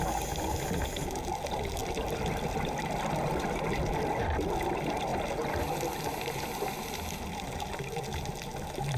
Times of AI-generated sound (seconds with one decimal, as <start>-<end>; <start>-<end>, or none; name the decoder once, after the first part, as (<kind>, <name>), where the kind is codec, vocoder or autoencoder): 1.8-3.9 (vocoder, BigVGAN v2)